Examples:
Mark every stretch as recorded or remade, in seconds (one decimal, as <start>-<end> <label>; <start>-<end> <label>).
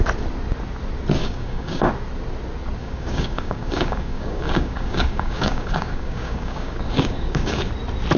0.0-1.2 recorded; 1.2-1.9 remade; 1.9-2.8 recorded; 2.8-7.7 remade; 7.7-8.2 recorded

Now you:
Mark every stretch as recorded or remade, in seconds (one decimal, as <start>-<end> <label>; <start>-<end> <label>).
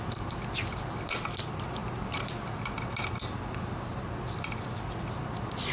0.0-5.7 recorded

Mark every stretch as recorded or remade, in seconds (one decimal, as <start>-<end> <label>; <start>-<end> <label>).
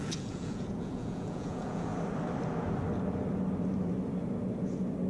0.0-1.9 remade; 1.9-5.1 recorded